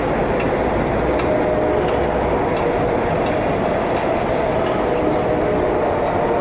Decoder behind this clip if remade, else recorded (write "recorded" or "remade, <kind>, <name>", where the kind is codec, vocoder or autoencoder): recorded